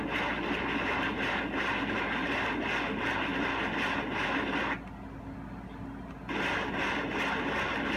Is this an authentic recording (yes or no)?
yes